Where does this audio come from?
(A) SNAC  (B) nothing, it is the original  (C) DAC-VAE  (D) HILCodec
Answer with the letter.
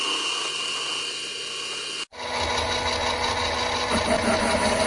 B